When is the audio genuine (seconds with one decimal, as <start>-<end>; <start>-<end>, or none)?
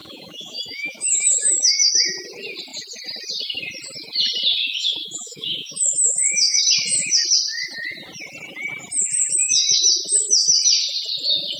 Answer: 1.9-4.6; 6.6-11.6